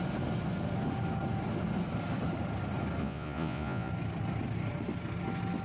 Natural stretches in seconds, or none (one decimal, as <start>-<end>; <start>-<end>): 0.0-3.0; 3.9-5.6

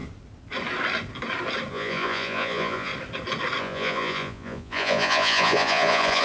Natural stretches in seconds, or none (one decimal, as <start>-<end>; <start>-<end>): 0.0-1.7; 2.9-3.6

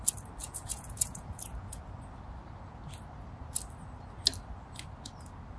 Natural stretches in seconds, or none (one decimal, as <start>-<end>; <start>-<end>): 0.0-0.4; 1.8-5.6

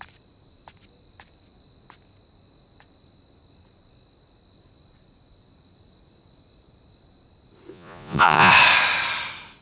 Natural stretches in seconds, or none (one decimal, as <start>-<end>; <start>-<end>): 0.0-7.7; 8.5-9.6

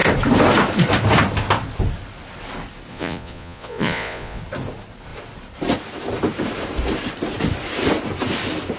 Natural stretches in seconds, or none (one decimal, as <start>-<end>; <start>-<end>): 0.0-2.9; 4.4-8.8